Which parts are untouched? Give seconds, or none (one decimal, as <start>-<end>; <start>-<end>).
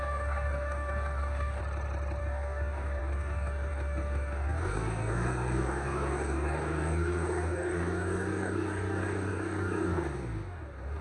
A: 1.6-2.2